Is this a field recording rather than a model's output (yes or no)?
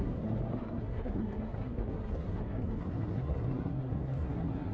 no